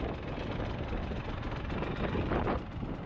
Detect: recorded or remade recorded